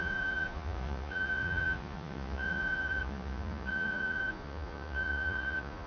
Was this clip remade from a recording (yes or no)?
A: yes